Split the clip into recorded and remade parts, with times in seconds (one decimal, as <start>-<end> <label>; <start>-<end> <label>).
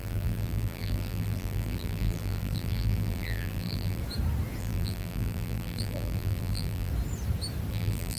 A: 0.0-4.0 remade; 4.0-4.6 recorded; 4.6-6.9 remade; 6.9-7.7 recorded; 7.7-8.2 remade